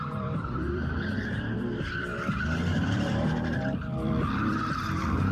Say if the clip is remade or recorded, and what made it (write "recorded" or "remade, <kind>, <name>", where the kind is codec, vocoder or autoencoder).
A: remade, vocoder, BigVGAN v2